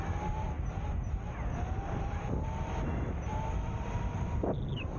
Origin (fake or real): real